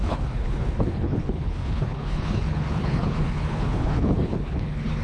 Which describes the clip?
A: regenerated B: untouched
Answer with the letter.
A